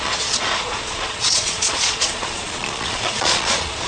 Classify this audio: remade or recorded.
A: remade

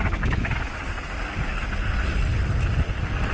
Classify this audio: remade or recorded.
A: recorded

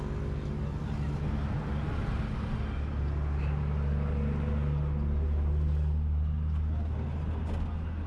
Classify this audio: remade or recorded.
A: recorded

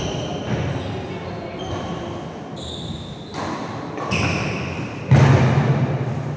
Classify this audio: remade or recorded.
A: recorded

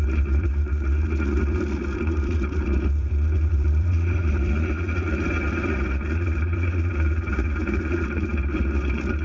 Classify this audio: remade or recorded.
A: remade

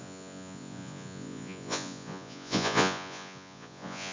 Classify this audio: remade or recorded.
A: remade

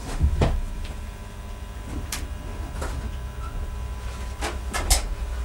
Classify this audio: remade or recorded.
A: recorded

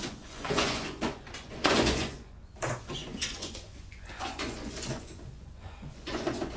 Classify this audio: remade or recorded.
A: remade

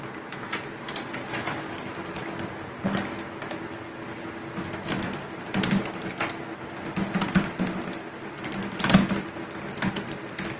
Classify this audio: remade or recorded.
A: recorded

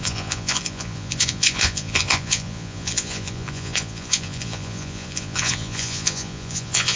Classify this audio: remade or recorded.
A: remade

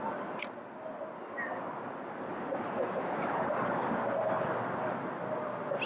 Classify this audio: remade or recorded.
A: recorded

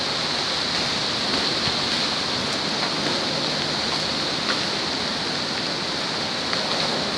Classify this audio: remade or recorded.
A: recorded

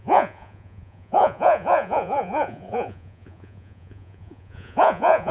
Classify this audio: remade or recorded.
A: remade